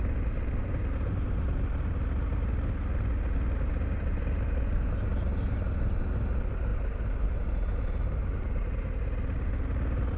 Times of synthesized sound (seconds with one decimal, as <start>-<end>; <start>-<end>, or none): none